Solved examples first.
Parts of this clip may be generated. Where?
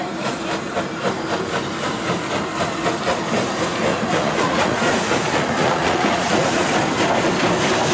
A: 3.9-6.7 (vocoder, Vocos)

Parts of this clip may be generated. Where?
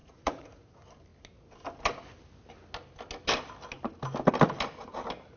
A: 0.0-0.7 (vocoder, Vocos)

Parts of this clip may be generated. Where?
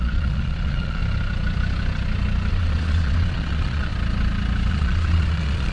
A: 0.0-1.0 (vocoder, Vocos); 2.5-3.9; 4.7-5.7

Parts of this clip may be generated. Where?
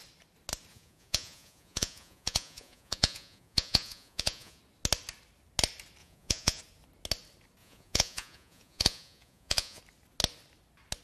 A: 0.7-4.6 (vocoder, Vocos); 6.0-6.6; 7.6-9.8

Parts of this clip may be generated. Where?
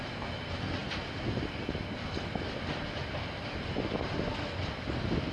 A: none